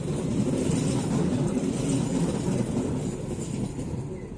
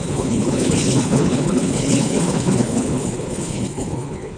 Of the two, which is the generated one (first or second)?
second